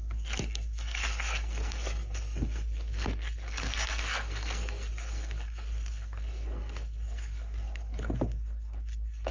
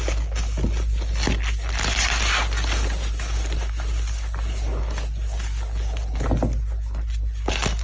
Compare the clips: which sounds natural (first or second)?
second